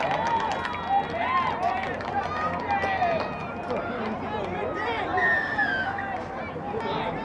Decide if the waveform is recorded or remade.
recorded